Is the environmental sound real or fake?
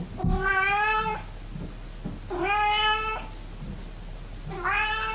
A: real